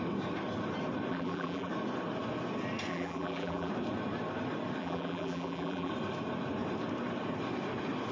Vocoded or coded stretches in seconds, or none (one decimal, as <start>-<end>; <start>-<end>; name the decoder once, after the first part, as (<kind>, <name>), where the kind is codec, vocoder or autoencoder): 1.1-1.7 (vocoder, BigVGAN v2); 2.9-3.7; 4.8-5.9

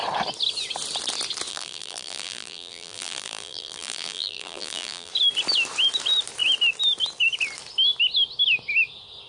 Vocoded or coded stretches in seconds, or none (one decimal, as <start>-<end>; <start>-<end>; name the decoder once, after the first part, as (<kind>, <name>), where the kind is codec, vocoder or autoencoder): 1.5-5.1 (vocoder, BigVGAN v2)

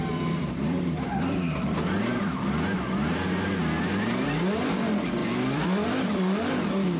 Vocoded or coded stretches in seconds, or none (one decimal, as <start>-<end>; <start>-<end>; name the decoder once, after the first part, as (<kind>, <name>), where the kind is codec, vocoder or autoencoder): 0.0-3.8 (vocoder, BigVGAN v2); 5.2-6.5

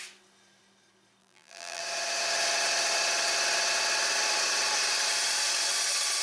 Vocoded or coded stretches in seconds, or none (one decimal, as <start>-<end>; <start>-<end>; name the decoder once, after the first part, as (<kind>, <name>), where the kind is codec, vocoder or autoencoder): 1.2-1.8 (vocoder, BigVGAN v2)

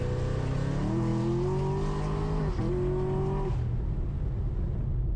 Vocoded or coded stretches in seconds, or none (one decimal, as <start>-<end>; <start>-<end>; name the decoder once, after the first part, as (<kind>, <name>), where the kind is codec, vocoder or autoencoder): none

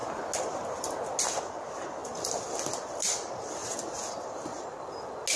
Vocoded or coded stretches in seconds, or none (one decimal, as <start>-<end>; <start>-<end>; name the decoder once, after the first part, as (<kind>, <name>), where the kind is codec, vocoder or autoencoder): 3.6-5.0 (vocoder, BigVGAN v2)

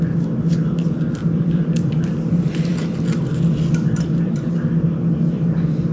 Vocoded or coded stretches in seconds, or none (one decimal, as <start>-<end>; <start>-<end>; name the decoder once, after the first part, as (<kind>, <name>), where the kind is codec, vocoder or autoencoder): 1.2-4.7 (vocoder, BigVGAN v2)

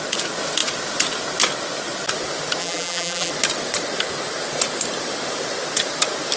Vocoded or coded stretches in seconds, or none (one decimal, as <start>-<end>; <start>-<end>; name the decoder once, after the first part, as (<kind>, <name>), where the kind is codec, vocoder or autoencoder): 2.6-3.3 (vocoder, BigVGAN v2)